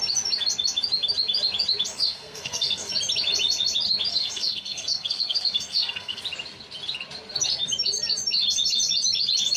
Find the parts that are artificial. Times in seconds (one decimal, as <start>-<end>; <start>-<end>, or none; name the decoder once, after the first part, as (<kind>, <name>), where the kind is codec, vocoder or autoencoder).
1.9-2.9 (codec, SNAC); 4.1-6.2